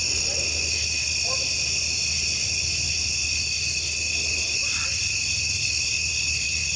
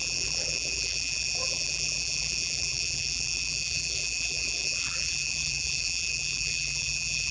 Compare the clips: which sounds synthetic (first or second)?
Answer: second